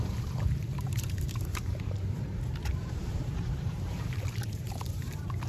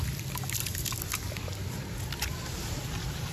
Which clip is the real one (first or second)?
second